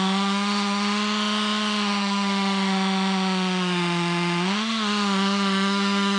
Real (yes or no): no